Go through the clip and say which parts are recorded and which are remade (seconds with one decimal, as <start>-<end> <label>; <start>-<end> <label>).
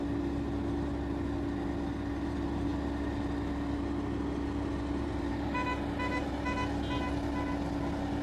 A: 0.0-8.2 recorded